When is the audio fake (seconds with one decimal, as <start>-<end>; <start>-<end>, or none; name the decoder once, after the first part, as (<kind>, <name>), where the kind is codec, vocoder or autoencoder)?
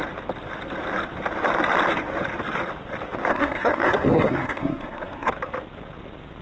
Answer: 3.3-5.3 (codec, SNAC)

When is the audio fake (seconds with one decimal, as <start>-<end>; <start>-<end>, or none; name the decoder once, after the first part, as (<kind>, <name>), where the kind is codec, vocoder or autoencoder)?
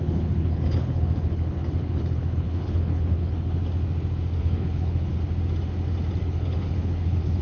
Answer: 0.0-3.6 (codec, HILCodec); 4.4-5.1; 6.2-7.4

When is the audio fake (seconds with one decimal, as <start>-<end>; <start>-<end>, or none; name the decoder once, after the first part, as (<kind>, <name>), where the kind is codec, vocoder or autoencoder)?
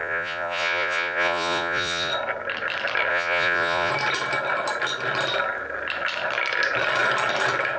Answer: 0.0-2.1 (vocoder, Vocos); 3.1-3.9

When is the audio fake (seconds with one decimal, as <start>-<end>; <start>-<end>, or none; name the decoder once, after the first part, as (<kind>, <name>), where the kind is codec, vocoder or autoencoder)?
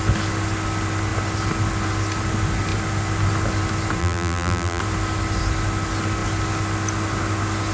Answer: 4.0-4.8 (vocoder, BigVGAN v2)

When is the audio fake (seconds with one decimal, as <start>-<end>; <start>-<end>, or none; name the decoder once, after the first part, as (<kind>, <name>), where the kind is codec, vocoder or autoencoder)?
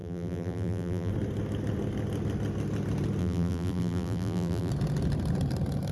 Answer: 0.0-1.1 (vocoder, BigVGAN v2); 3.2-4.7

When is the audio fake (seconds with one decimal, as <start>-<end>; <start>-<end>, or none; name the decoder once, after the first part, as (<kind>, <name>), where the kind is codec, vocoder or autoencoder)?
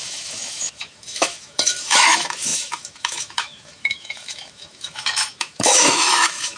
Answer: 0.0-6.6 (autoencoder, DAC-VAE)